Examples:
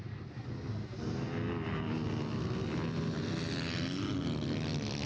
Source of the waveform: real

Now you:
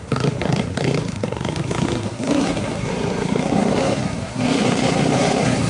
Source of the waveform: fake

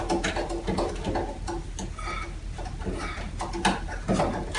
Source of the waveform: real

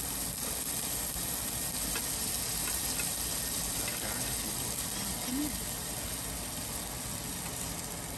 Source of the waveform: real